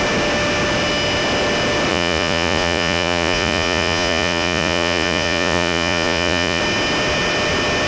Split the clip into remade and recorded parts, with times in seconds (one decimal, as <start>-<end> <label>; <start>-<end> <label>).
0.0-1.9 recorded; 1.9-6.6 remade; 6.6-7.9 recorded